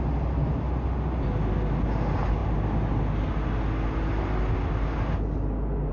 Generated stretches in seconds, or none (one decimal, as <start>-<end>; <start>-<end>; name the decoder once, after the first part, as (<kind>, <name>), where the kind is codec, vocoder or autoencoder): none